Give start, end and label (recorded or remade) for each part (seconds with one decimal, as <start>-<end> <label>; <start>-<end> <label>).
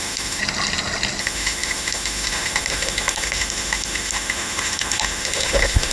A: 0.0-0.4 remade; 0.4-1.2 recorded; 1.2-5.9 remade